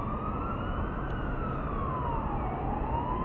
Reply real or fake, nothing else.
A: real